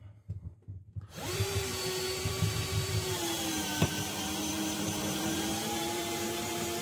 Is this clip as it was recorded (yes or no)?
no